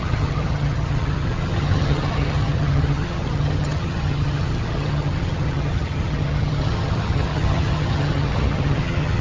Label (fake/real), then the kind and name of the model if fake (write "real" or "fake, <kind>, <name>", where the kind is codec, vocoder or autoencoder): fake, vocoder, HiFi-GAN